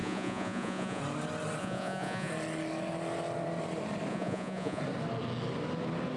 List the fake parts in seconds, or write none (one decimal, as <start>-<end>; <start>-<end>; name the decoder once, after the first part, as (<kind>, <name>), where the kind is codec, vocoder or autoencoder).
0.0-1.0 (vocoder, Vocos); 1.6-2.3; 4.1-4.8